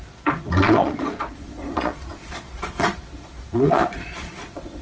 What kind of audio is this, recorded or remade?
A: remade